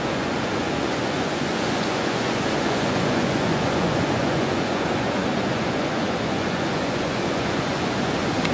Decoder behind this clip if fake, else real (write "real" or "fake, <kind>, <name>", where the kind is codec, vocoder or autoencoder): fake, vocoder, Vocos